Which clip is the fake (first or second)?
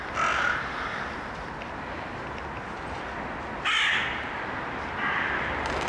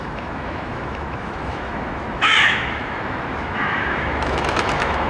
second